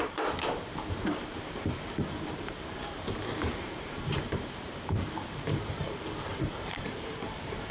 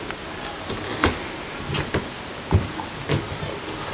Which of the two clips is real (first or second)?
second